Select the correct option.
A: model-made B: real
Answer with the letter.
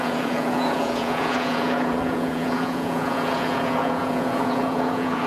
A